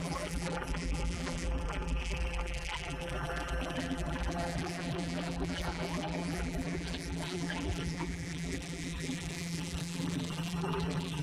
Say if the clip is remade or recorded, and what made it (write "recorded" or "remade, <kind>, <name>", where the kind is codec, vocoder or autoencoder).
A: remade, vocoder, BigVGAN v2